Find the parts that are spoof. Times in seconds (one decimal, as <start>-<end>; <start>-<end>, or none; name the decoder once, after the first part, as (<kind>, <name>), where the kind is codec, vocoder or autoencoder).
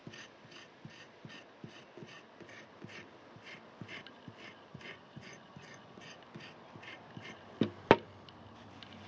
4.7-6.0 (vocoder, Vocos)